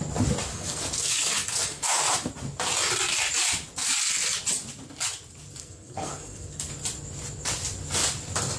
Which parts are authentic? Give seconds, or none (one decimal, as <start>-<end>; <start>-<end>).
0.0-0.5; 2.0-5.6; 6.7-8.6